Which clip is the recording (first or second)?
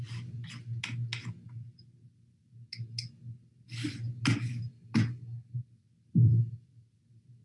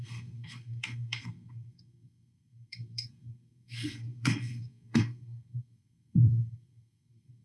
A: first